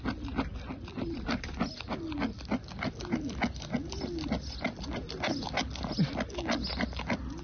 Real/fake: real